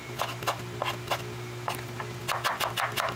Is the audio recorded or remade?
recorded